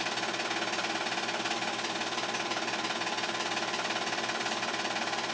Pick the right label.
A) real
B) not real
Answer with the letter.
A